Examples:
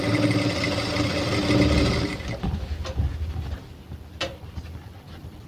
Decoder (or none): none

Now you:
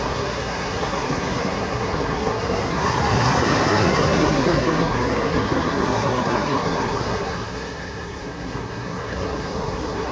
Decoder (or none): codec, SNAC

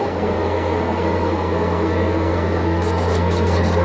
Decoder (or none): codec, SNAC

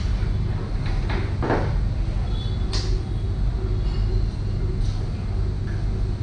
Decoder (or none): none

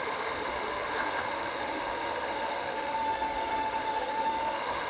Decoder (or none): autoencoder, DAC-VAE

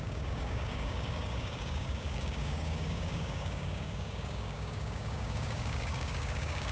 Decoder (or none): codec, DAC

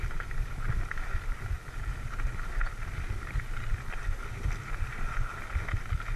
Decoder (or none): none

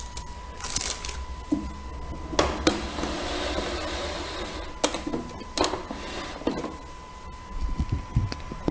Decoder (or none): none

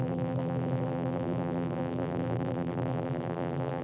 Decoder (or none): vocoder, BigVGAN v2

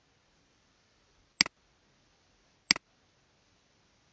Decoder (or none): none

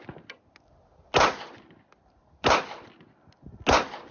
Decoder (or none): none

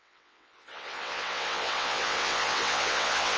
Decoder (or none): vocoder, WaveNeXt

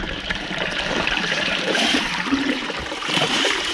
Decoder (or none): vocoder, BigVGAN v2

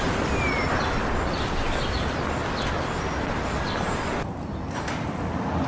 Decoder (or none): none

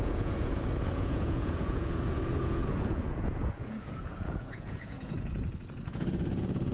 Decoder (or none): vocoder, Vocos